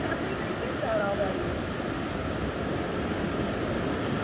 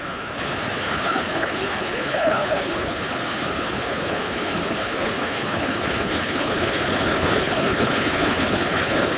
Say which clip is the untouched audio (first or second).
first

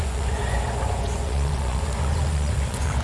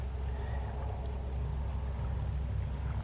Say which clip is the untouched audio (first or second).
second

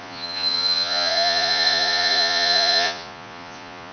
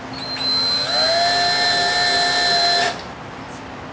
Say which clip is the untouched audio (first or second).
second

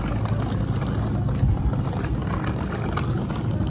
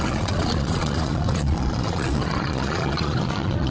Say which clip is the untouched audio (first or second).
first